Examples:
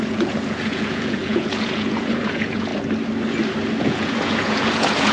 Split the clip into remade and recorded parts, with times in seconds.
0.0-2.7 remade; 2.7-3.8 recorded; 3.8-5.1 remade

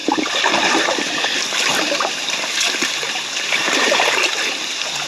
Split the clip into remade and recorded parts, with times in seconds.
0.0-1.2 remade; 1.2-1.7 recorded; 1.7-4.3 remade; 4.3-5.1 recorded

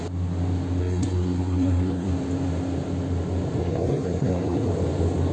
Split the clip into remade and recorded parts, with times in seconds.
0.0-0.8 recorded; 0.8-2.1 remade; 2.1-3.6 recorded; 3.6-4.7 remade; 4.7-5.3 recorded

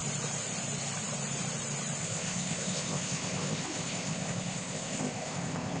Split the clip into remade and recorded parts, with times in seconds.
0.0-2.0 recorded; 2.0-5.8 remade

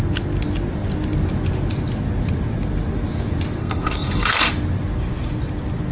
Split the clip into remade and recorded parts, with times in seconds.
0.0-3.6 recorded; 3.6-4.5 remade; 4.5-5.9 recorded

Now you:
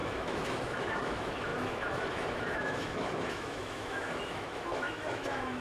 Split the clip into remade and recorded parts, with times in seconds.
0.0-5.6 remade